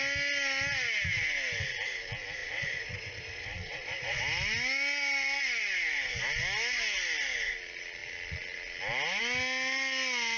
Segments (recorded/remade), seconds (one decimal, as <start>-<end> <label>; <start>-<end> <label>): 0.0-2.4 recorded; 2.4-4.2 remade; 4.2-10.4 recorded